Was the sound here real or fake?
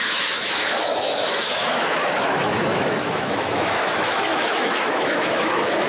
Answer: fake